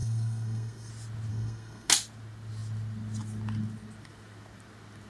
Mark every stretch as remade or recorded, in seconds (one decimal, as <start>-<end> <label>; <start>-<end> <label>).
0.0-0.9 remade; 0.9-1.3 recorded; 1.3-1.9 remade; 1.9-5.1 recorded